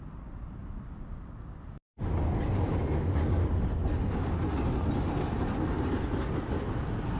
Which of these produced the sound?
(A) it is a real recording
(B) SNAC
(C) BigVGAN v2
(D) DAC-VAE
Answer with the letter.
A